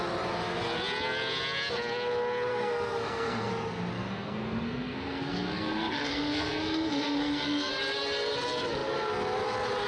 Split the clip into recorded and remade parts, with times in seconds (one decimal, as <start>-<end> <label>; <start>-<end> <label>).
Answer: 0.0-2.5 recorded; 2.5-3.5 remade; 3.5-3.9 recorded; 3.9-7.7 remade; 7.7-9.9 recorded